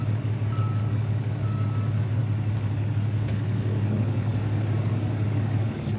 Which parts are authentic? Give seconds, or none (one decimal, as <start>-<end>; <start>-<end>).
2.2-2.7; 4.3-4.8